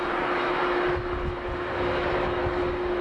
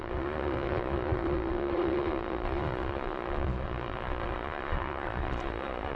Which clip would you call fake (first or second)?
second